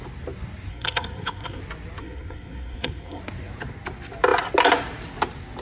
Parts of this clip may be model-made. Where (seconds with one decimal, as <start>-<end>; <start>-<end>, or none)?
0.7-1.6; 2.0-3.2